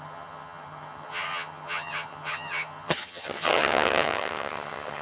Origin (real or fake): fake